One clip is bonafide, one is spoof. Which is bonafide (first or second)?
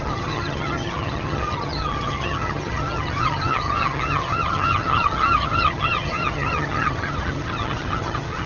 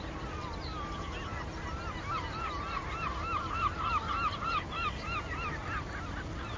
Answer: second